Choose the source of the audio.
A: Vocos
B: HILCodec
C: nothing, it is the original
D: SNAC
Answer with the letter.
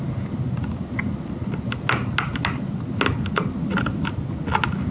C